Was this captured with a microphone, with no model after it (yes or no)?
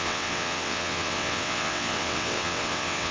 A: no